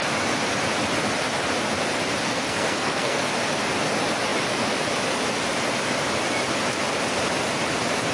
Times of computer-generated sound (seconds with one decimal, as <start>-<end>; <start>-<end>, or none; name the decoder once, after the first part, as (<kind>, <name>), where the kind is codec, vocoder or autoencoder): 2.2-3.3 (codec, SNAC)